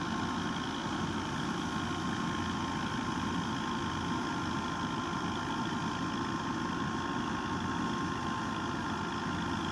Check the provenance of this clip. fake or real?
real